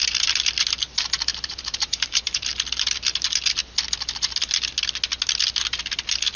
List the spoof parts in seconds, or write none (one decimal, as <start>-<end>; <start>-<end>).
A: 1.3-2.3